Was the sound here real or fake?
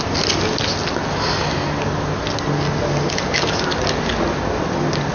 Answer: real